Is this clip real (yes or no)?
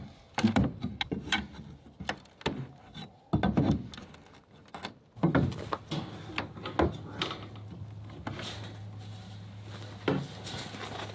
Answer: yes